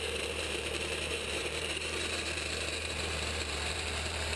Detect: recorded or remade remade